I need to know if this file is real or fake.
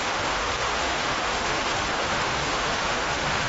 fake